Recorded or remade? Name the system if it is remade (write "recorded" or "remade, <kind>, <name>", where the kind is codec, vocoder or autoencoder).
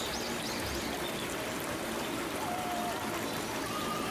recorded